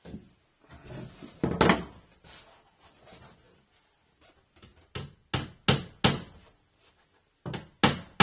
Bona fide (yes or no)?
yes